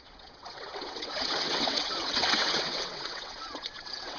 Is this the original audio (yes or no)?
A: no